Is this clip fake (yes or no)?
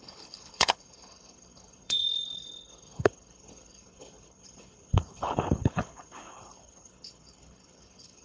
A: yes